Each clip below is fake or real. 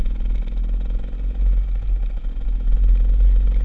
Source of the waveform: real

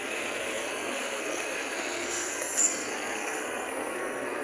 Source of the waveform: fake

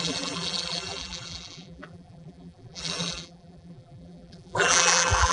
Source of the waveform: fake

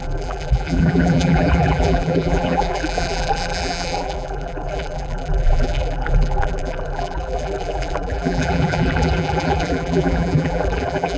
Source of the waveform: fake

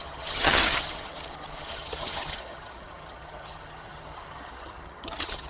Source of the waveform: fake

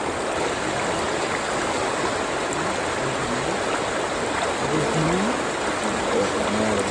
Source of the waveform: real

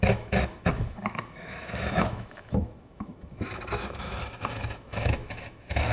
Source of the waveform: fake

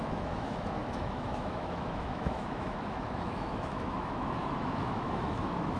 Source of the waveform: fake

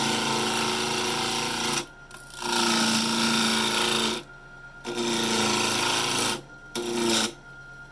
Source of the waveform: real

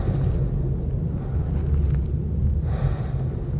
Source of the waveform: real